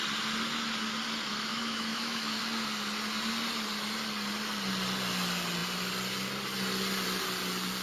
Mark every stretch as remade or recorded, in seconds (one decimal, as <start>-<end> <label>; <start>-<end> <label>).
0.0-1.5 recorded; 1.5-2.4 remade; 2.4-7.8 recorded